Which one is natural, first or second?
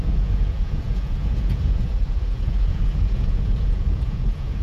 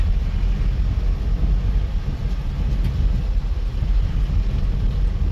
second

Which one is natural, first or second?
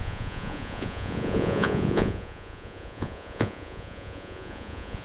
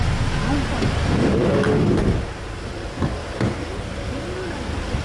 second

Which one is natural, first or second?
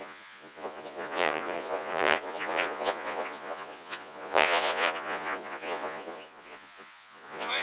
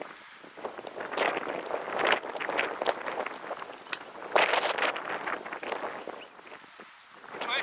second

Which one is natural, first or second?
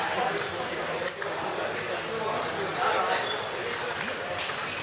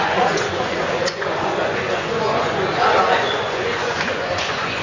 first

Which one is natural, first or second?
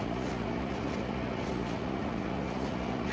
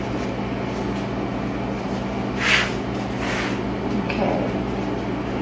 second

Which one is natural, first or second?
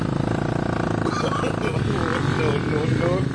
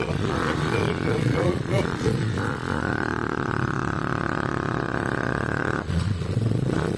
first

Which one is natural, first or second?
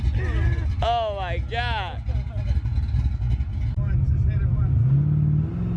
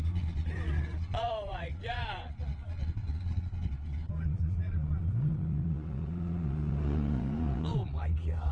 first